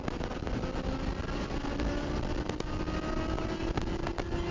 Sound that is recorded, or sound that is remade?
recorded